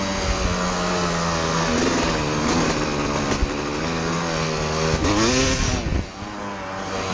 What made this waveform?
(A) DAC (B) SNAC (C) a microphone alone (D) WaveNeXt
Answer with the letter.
C